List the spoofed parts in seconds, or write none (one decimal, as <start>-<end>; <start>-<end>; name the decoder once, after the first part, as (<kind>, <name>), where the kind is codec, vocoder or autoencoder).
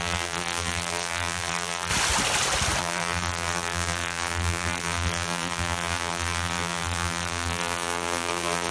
0.0-1.9 (vocoder, BigVGAN v2); 2.8-8.7